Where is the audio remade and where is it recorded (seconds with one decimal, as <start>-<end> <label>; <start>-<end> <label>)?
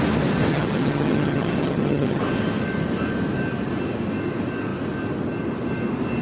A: 0.0-0.5 recorded; 0.5-2.2 remade; 2.2-6.2 recorded